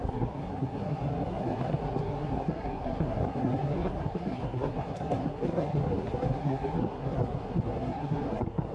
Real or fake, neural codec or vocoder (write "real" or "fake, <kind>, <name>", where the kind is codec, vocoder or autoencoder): fake, codec, SNAC